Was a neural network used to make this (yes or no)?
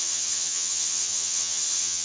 yes